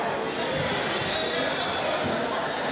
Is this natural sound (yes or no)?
yes